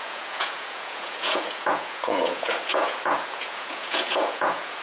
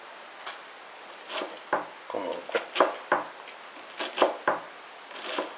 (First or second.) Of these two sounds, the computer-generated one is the first